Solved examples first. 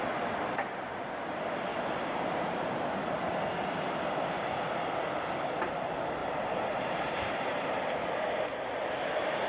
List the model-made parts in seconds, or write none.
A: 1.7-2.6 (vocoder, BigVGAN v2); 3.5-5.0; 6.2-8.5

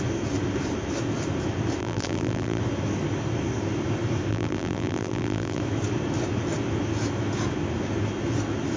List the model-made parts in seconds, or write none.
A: 1.8-2.6 (vocoder, BigVGAN v2); 4.3-5.6